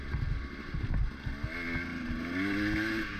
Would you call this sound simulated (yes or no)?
no